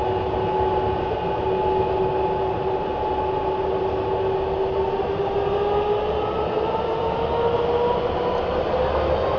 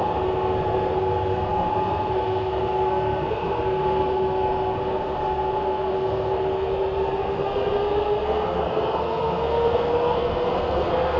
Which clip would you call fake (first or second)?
second